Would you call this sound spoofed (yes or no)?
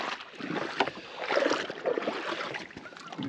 no